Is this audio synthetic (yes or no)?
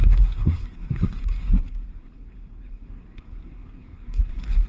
yes